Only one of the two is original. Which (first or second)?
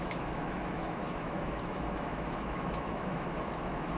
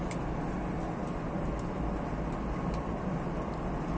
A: second